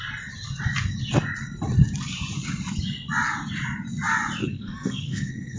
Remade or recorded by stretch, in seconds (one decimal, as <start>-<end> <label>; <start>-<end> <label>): 0.0-4.4 recorded; 4.4-5.6 remade